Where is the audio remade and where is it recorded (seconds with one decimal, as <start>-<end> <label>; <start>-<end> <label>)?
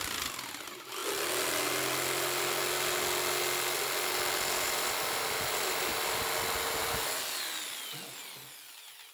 0.0-9.1 recorded